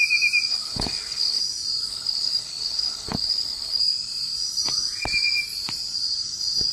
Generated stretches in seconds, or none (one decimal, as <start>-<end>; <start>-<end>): 0.5-1.4; 1.9-3.8